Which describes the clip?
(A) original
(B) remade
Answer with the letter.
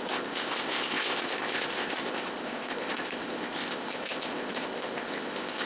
B